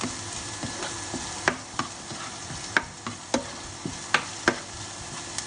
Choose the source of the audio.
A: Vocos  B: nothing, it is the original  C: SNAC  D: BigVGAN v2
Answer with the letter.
B